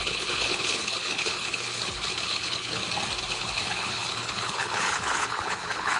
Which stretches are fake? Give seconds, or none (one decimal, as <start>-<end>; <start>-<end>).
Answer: 0.0-2.8; 3.3-6.0